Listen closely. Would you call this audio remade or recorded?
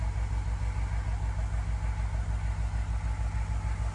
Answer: recorded